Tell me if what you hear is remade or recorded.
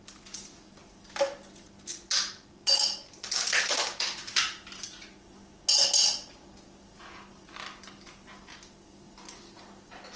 recorded